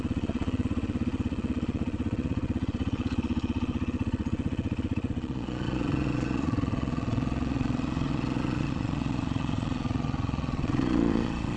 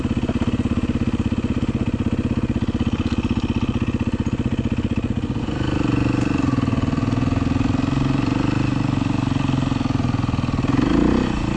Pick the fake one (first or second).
first